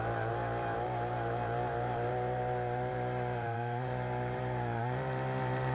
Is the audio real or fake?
fake